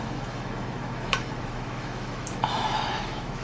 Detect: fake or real fake